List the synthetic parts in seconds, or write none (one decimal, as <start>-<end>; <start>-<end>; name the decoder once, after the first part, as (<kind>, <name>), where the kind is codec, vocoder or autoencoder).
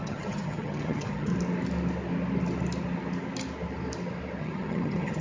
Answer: 0.0-1.3 (vocoder, HiFi-GAN); 4.4-5.2